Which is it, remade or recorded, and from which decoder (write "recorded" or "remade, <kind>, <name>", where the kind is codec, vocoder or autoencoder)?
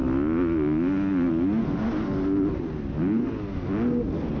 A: recorded